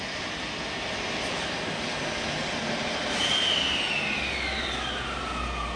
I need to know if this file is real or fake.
real